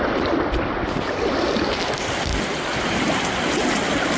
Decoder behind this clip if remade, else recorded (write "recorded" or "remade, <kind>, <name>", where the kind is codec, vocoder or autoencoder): recorded